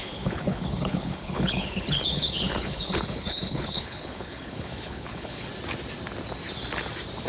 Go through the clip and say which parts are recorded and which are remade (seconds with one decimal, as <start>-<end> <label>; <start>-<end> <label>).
0.0-5.5 remade; 5.5-7.3 recorded